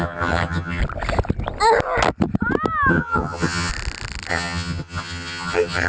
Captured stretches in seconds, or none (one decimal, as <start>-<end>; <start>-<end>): 0.8-2.9; 3.7-4.3